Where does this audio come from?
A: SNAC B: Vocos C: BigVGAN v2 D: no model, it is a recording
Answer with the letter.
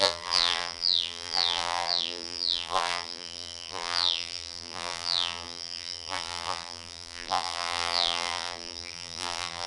C